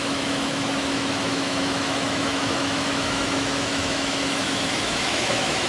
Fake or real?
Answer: fake